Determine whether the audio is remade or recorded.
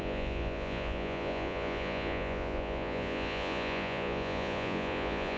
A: remade